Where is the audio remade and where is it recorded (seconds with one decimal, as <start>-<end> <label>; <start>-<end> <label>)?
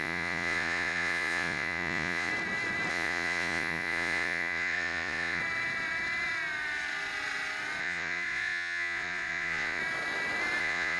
0.0-2.3 remade; 2.3-2.9 recorded; 2.9-5.4 remade; 5.4-7.8 recorded; 7.8-9.8 remade; 9.8-10.6 recorded; 10.6-11.0 remade